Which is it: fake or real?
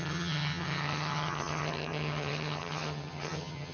fake